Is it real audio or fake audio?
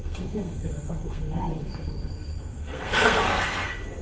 fake